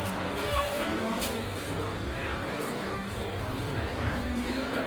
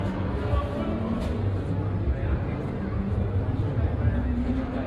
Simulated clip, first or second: first